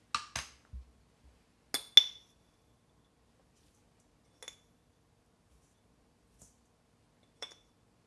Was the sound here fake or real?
real